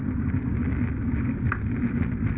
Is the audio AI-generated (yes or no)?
no